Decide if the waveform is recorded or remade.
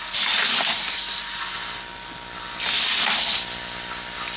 recorded